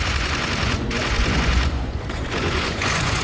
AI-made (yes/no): yes